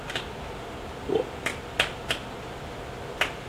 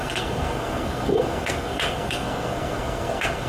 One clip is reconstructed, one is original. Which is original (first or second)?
first